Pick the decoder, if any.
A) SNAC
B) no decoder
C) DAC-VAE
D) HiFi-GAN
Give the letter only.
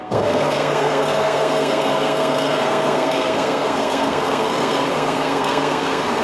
A